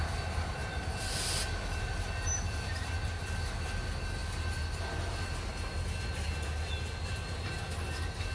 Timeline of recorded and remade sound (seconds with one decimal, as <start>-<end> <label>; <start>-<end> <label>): 0.0-8.3 recorded